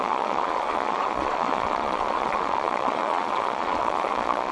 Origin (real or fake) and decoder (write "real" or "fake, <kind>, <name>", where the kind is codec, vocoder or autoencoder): fake, vocoder, Vocos